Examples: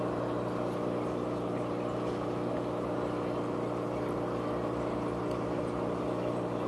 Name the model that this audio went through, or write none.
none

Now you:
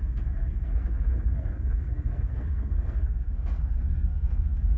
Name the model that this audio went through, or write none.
codec, SNAC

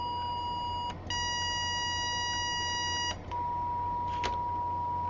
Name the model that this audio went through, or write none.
none